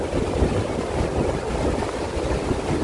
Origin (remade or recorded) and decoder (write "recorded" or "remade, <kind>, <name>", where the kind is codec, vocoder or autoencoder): recorded